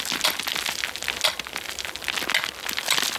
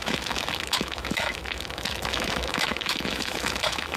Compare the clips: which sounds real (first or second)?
first